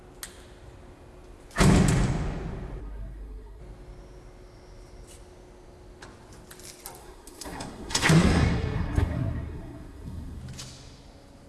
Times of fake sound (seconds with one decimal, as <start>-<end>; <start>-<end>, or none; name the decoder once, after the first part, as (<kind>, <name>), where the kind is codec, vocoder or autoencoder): 2.8-3.6 (codec, SNAC); 7.0-10.4